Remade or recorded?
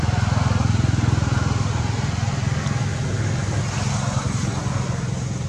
recorded